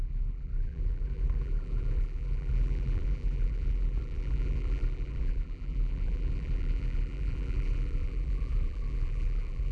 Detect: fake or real fake